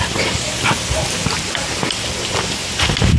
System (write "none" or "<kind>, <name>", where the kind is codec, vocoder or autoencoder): none